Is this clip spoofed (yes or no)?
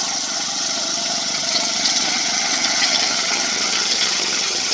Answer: yes